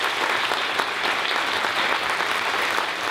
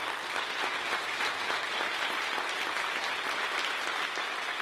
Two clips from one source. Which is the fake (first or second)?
first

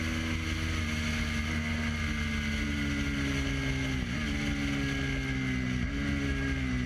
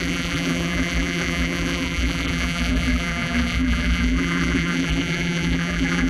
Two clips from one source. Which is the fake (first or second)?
second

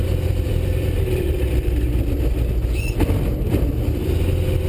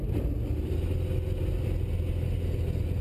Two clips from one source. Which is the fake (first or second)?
first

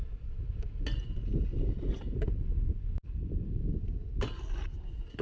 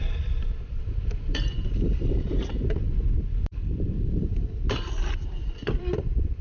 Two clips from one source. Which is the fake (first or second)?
second